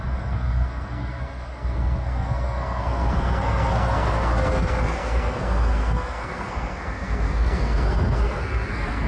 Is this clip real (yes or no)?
no